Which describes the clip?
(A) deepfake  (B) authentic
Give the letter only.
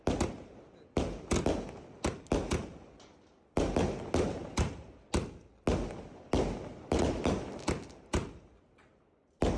B